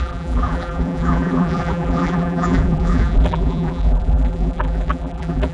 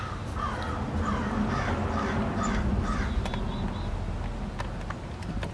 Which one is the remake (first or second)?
first